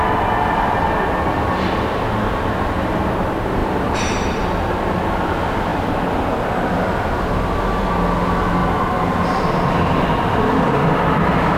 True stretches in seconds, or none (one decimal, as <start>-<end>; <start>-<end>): 0.0-11.6